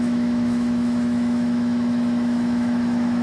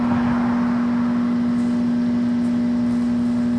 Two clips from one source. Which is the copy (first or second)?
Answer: first